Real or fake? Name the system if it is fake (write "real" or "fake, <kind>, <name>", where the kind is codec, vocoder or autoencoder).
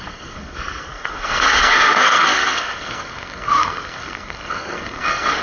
fake, codec, SNAC